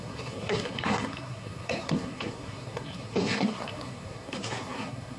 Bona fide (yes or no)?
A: no